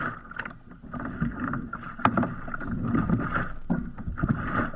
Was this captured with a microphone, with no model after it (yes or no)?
yes